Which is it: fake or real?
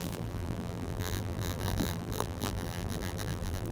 fake